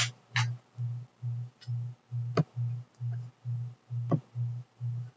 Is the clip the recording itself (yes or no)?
yes